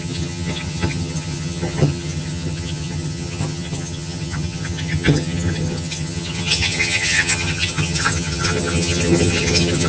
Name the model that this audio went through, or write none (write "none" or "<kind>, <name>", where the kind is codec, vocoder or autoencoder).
vocoder, HiFi-GAN